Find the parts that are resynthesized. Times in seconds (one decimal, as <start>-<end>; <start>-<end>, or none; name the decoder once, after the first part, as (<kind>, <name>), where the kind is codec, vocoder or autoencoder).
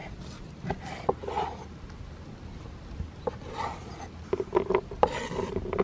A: 4.5-5.2 (vocoder, BigVGAN v2)